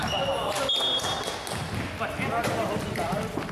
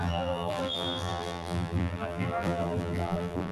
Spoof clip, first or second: second